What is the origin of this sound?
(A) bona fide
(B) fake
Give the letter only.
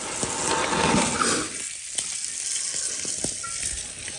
A